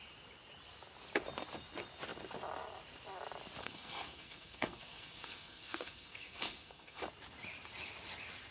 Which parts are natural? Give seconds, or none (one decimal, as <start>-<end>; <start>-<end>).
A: 0.0-3.6; 7.0-8.5